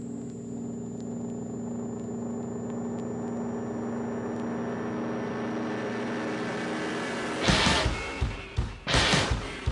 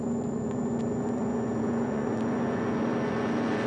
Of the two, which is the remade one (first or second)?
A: second